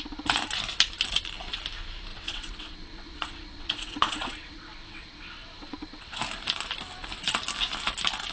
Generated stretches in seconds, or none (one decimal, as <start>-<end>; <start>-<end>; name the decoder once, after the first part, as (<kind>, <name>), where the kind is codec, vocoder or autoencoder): 2.1-6.2 (vocoder, WaveNeXt)